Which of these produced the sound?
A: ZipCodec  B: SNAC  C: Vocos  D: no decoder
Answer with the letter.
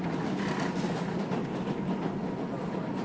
D